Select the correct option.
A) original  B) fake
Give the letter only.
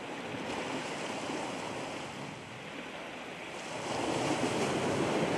A